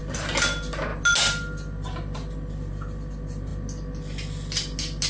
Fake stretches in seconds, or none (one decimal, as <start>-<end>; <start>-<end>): none